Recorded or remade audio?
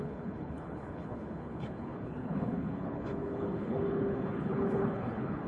remade